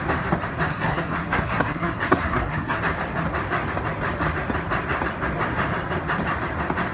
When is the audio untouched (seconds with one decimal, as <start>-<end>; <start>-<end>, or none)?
0.0-0.7; 2.8-6.9